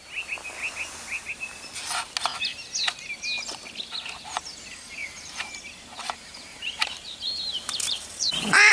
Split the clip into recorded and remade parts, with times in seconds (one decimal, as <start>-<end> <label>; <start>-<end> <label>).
0.0-5.0 recorded; 5.0-8.7 remade